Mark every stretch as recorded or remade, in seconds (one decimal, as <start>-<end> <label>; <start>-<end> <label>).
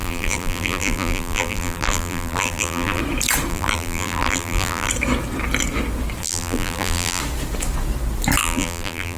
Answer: 0.0-3.0 remade; 3.0-3.5 recorded; 3.5-4.9 remade; 4.9-6.2 recorded; 6.2-7.2 remade; 7.2-8.4 recorded; 8.4-9.2 remade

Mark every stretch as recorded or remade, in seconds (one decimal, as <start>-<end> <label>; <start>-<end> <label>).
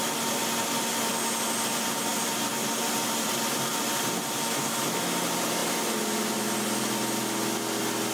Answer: 0.0-8.1 recorded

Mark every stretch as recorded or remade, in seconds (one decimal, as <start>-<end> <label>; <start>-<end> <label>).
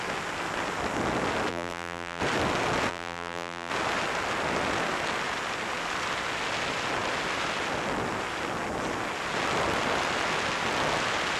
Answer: 0.0-1.5 recorded; 1.5-2.2 remade; 2.2-2.9 recorded; 2.9-3.7 remade; 3.7-11.4 recorded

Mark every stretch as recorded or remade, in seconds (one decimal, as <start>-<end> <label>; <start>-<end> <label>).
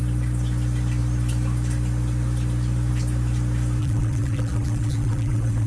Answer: 0.0-3.8 recorded; 3.8-5.7 remade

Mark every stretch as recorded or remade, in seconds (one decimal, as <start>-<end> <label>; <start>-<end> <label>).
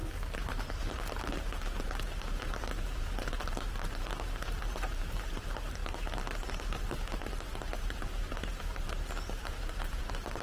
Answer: 0.0-10.4 remade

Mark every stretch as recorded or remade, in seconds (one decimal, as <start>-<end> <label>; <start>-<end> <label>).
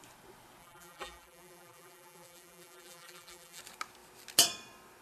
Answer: 0.0-0.6 recorded; 0.6-3.6 remade; 3.6-5.0 recorded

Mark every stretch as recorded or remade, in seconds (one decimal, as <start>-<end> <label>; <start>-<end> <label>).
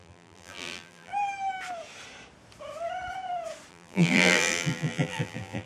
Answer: 0.0-1.1 remade; 1.1-3.7 recorded; 3.7-5.7 remade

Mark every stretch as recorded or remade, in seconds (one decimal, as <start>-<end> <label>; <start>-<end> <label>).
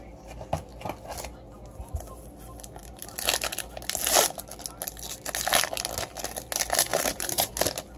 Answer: 0.0-6.9 recorded; 6.9-7.5 remade; 7.5-8.0 recorded